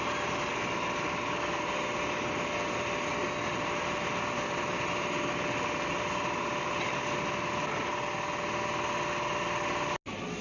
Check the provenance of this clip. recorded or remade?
recorded